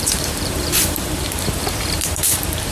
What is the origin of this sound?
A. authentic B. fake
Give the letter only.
B